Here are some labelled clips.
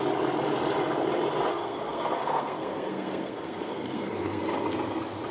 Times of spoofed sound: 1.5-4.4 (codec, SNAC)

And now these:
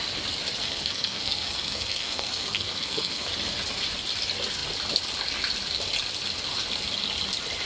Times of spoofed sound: 0.6-3.3 (codec, SNAC)

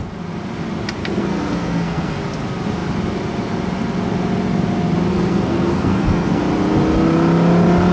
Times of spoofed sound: 1.0-2.2 (codec, SNAC); 5.1-6.4

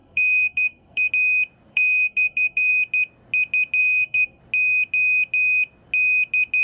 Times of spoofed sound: 0.0-1.1 (codec, SNAC); 1.7-2.7; 3.8-4.4